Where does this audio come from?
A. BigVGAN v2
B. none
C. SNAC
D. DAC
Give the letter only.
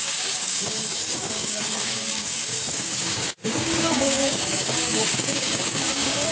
D